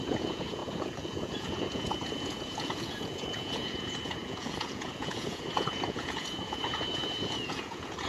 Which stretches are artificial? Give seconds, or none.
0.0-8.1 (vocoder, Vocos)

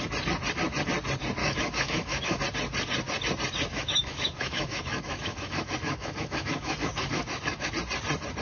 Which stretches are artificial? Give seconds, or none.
1.4-2.4 (autoencoder, DAC-VAE); 3.7-7.7

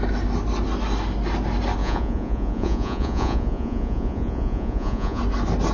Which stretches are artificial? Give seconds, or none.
1.8-5.2 (vocoder, Vocos)

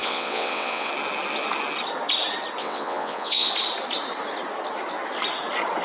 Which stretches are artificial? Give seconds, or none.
0.0-0.9 (vocoder, WaveNeXt); 2.6-3.5

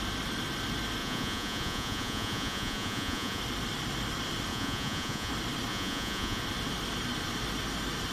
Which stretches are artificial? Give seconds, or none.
1.0-3.4 (vocoder, Vocos); 4.5-5.3; 5.7-6.4